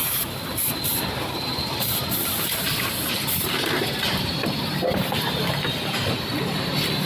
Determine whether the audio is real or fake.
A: fake